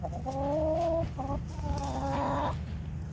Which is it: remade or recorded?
recorded